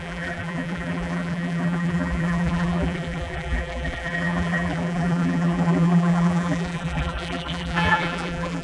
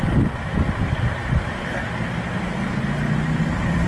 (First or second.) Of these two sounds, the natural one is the second